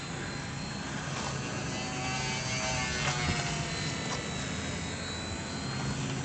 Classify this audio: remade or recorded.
recorded